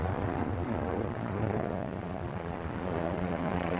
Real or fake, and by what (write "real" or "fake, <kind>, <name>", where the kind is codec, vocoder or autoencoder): fake, vocoder, Vocos